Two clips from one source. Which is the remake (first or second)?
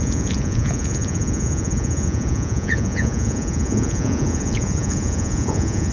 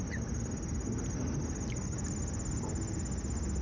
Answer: first